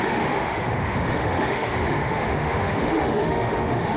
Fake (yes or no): yes